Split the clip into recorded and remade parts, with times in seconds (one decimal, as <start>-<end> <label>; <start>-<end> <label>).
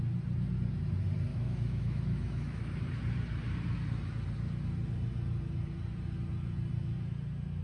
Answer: 0.0-1.3 recorded; 1.3-2.8 remade; 2.8-7.6 recorded